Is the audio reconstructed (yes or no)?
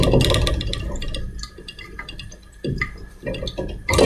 yes